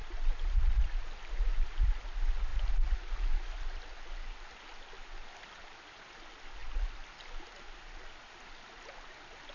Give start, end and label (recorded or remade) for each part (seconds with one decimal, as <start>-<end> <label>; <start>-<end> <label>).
0.0-0.5 remade; 0.5-2.5 recorded; 2.5-3.9 remade; 3.9-9.5 recorded